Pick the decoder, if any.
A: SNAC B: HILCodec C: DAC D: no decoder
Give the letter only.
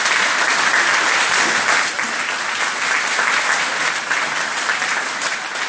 D